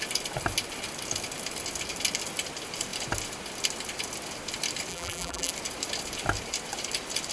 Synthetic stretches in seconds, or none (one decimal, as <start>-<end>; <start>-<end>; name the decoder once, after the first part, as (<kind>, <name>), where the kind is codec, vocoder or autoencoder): 4.9-5.5 (vocoder, BigVGAN v2)